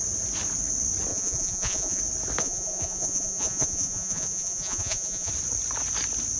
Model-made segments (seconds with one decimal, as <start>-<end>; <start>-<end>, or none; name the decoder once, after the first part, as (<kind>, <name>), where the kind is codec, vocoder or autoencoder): 1.1-2.0 (vocoder, Vocos); 2.4-5.3